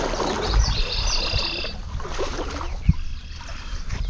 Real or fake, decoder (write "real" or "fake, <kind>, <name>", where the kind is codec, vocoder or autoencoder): fake, vocoder, BigVGAN v2